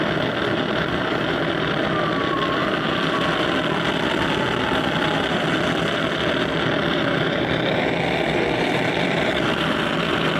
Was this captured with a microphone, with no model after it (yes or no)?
no